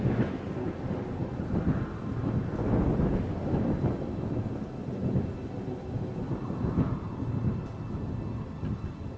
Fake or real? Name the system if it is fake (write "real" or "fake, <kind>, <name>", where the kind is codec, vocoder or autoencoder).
real